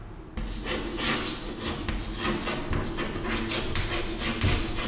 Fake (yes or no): no